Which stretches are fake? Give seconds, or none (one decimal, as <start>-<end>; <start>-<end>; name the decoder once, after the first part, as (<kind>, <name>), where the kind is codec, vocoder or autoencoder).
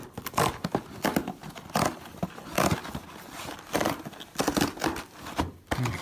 none